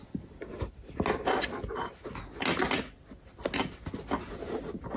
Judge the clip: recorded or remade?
recorded